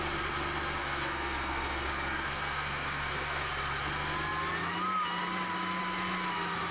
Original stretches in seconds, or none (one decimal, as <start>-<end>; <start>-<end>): 0.0-0.8; 3.5-6.7